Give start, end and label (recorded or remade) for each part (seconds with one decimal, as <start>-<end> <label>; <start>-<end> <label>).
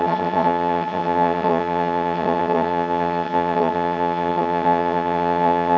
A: 0.0-5.8 remade